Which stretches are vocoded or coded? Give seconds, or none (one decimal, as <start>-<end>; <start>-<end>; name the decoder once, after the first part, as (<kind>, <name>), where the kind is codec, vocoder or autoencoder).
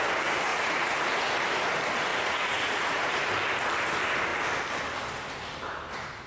0.5-1.2 (vocoder, Vocos); 2.1-3.3